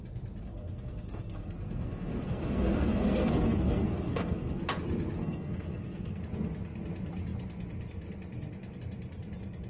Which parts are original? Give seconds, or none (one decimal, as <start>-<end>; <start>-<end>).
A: 0.0-0.4; 4.6-5.2; 6.2-9.7